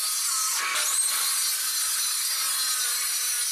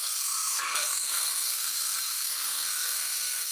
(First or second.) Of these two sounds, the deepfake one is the second